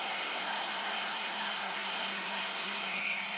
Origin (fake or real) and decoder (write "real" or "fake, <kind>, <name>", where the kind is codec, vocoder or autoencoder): fake, codec, SNAC